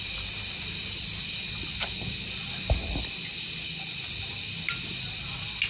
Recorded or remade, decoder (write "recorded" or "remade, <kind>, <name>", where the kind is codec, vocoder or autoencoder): recorded